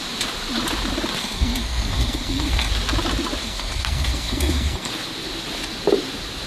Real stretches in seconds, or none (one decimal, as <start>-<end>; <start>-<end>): 0.0-1.2; 2.7-3.4; 4.9-6.5